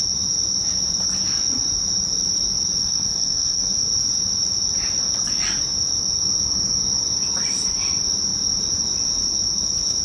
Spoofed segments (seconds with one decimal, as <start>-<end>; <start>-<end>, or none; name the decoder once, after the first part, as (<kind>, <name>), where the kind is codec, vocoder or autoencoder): 2.8-3.8 (codec, SNAC)